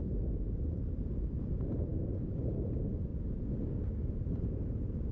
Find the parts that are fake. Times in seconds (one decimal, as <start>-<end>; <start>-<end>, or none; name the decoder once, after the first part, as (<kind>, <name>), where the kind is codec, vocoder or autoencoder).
0.0-3.1 (vocoder, BigVGAN v2); 3.9-5.1